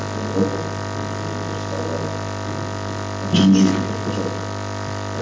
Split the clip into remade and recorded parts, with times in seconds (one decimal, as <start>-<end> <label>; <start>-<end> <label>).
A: 0.0-5.2 recorded